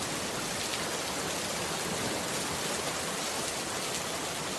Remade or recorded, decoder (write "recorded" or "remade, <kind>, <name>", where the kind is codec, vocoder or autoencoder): recorded